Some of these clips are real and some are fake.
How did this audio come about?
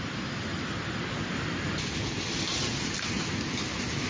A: real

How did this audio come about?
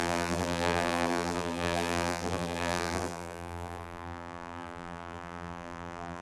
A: fake